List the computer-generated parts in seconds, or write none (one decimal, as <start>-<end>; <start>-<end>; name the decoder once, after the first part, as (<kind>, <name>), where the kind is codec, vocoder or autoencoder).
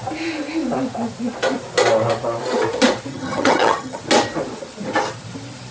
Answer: 3.1-4.0 (vocoder, HiFi-GAN)